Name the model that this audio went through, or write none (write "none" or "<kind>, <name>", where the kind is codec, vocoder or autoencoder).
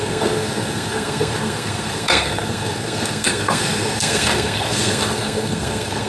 codec, SNAC